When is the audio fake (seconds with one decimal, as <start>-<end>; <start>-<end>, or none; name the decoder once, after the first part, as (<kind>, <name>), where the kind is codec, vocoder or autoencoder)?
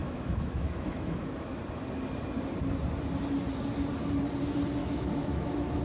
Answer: 0.0-1.6 (autoencoder, DAC-VAE); 4.8-5.8